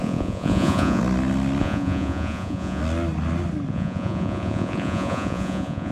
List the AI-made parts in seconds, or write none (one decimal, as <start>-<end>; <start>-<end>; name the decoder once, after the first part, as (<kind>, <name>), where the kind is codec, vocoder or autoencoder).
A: 0.0-1.0 (vocoder, Vocos); 1.6-2.8; 3.7-5.9